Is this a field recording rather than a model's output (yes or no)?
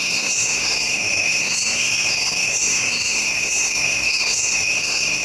no